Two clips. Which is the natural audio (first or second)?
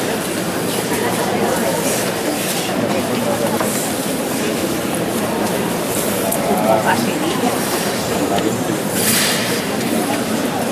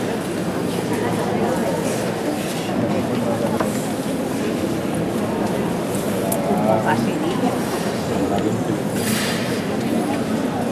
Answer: second